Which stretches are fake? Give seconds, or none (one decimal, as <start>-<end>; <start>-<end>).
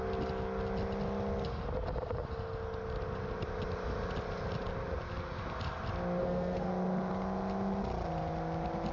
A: 6.2-6.7